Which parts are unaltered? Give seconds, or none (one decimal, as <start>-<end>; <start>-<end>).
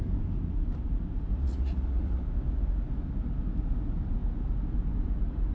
0.0-1.3; 2.2-5.5